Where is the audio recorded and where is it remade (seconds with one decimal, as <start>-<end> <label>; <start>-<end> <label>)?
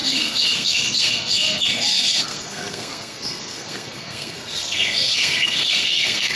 0.0-6.4 remade